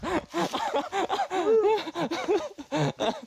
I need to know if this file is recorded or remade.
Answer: recorded